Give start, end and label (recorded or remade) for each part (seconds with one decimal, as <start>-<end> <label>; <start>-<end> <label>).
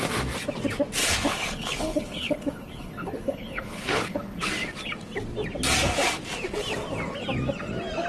0.0-1.0 recorded; 1.0-4.4 remade; 4.4-8.1 recorded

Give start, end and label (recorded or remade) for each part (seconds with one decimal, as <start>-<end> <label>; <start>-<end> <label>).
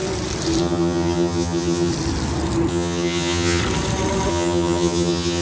0.0-0.6 recorded; 0.6-1.9 remade; 1.9-2.7 recorded; 2.7-3.6 remade; 3.6-4.3 recorded; 4.3-5.4 remade